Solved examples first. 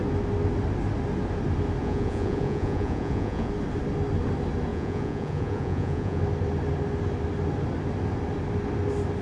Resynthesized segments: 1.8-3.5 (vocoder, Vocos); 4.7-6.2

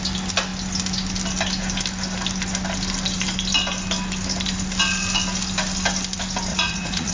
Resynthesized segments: 6.5-7.1 (vocoder, Vocos)

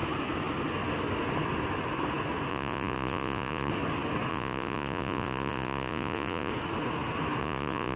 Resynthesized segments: 2.5-3.7 (vocoder, Vocos); 4.3-6.5; 7.4-8.0